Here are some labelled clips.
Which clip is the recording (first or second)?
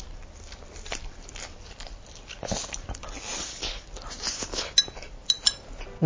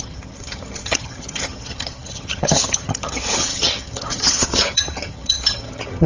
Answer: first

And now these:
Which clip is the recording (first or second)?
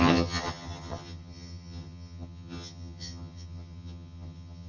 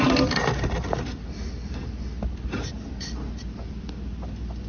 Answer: second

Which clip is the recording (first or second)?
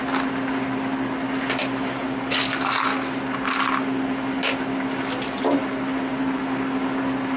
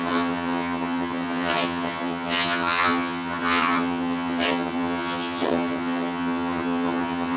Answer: first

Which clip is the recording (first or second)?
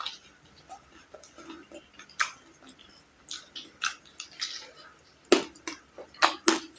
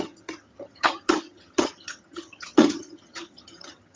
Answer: first